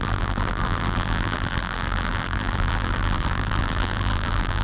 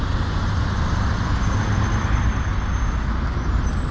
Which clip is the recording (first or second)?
second